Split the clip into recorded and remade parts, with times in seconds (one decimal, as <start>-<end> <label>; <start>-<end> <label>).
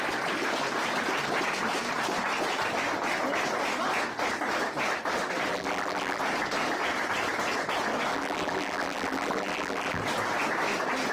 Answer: 0.0-5.5 recorded; 5.5-6.2 remade; 6.2-8.1 recorded; 8.1-10.0 remade; 10.0-11.1 recorded